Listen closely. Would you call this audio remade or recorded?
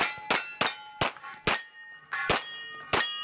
recorded